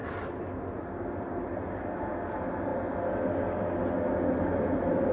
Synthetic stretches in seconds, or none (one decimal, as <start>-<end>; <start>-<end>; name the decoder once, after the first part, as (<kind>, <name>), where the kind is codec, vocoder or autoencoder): none